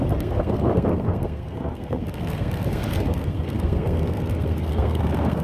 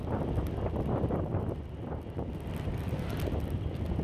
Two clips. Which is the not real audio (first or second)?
first